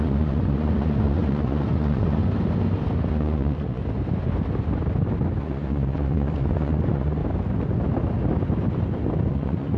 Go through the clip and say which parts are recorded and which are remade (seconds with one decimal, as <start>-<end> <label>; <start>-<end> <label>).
0.0-2.2 remade; 2.2-3.1 recorded; 3.1-3.8 remade; 3.8-5.4 recorded; 5.4-7.2 remade; 7.2-9.3 recorded; 9.3-9.8 remade